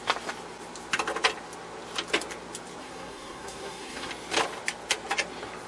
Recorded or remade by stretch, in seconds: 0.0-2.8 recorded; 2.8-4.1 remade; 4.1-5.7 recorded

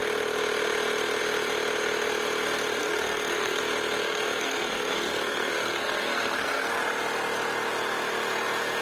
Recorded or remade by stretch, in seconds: 0.0-2.8 recorded; 2.8-3.6 remade; 3.6-4.0 recorded; 4.0-6.8 remade; 6.8-8.8 recorded

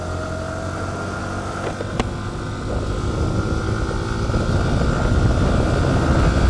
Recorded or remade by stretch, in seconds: 0.0-6.5 recorded

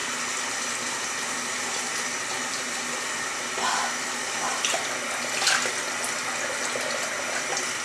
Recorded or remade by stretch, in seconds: 0.0-7.8 recorded

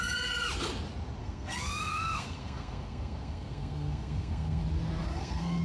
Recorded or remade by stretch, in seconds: 0.0-1.2 recorded; 1.2-4.6 remade; 4.6-5.0 recorded; 5.0-5.6 remade

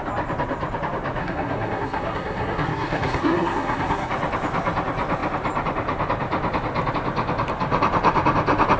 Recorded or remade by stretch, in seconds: 0.0-1.2 recorded; 1.2-4.1 remade; 4.1-8.8 recorded